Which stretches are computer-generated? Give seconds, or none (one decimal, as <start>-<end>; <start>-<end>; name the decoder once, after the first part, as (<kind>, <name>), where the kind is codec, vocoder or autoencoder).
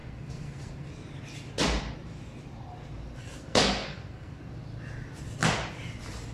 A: 0.0-0.9 (codec, SNAC); 3.2-4.4